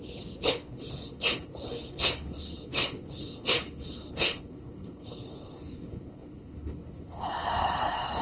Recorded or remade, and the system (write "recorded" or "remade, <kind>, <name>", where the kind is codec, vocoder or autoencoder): remade, codec, HILCodec